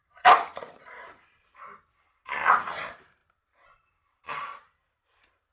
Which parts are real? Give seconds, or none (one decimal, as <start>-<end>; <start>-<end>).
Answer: 1.7-2.5